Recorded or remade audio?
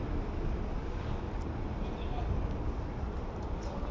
recorded